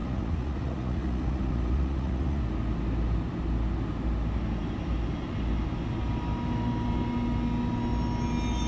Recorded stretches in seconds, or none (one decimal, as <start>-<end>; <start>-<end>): 2.4-8.7